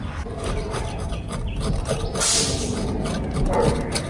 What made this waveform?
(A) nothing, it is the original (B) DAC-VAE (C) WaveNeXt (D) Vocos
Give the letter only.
A